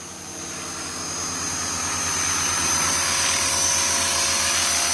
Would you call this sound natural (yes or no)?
yes